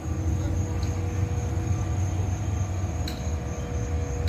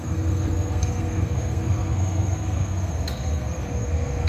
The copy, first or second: second